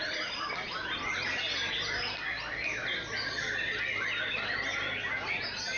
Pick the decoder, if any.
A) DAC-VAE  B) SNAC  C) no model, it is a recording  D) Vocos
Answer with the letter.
C